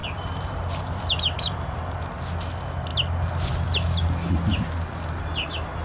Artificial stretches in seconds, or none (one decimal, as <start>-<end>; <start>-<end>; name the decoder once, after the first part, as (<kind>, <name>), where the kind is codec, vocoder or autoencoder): 0.0-2.0 (vocoder, BigVGAN v2)

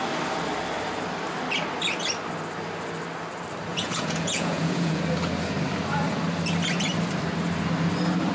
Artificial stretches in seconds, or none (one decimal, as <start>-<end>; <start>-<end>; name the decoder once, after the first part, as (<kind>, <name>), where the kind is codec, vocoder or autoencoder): 3.7-5.0 (vocoder, Vocos)

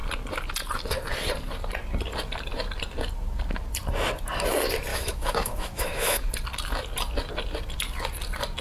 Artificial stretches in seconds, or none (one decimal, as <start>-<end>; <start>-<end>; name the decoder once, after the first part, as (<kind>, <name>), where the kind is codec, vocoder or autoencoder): 4.9-6.3 (autoencoder, DAC-VAE)

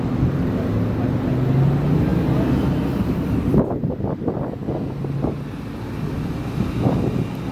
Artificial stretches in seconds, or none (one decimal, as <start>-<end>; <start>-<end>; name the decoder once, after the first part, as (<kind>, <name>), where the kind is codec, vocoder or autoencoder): none

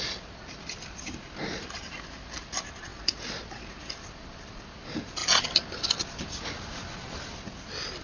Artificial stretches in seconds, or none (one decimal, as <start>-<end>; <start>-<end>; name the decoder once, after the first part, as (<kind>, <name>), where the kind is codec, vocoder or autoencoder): 0.0-2.9 (vocoder, BigVGAN v2); 3.5-5.2; 6.4-8.0

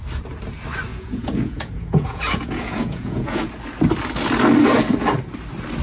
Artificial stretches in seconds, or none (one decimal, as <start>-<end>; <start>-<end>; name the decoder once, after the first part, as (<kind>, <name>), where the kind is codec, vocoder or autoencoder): 0.9-3.5 (vocoder, Vocos)

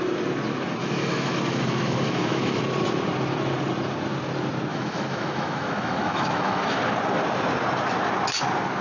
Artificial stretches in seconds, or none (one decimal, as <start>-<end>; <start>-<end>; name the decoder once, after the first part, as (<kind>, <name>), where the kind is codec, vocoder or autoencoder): 0.8-2.6 (autoencoder, DAC-VAE); 4.7-6.8